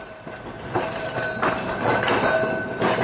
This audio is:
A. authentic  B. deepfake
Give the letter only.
A